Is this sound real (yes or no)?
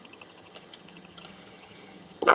no